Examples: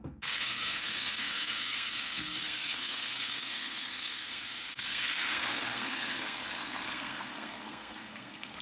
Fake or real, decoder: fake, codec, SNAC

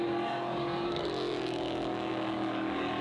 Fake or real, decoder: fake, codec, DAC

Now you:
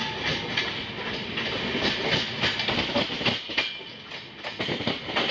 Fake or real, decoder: real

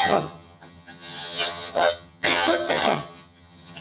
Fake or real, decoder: fake, vocoder, HiFi-GAN